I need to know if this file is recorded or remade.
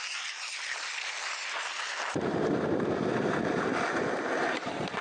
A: remade